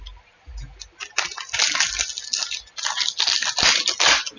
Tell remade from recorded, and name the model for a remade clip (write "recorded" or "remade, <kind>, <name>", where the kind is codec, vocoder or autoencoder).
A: recorded